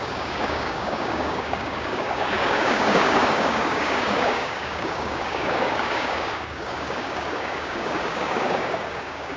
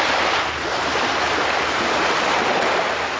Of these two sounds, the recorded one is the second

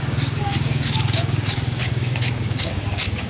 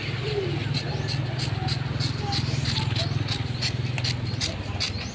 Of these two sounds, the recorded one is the second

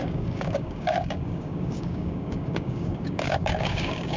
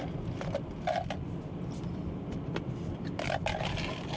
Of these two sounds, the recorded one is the second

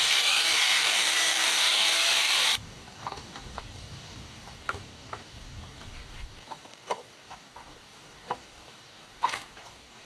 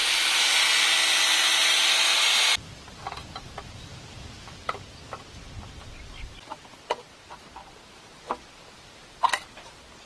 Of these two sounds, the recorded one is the second